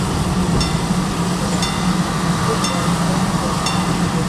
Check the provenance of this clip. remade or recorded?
recorded